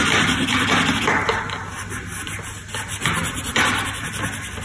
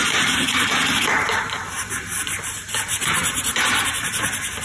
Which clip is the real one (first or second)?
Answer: first